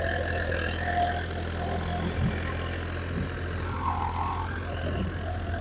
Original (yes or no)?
yes